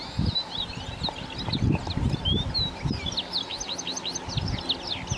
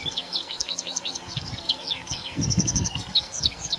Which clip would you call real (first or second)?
first